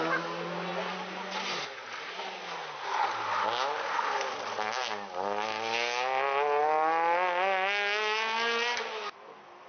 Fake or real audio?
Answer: real